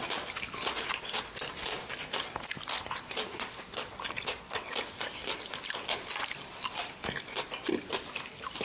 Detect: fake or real real